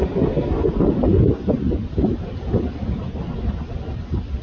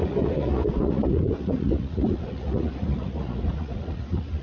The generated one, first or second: second